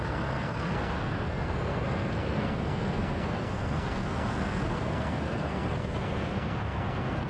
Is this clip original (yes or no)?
no